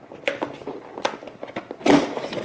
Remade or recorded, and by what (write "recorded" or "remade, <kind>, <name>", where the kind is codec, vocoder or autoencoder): recorded